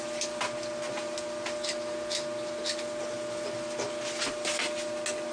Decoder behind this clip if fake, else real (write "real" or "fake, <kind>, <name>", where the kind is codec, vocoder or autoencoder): real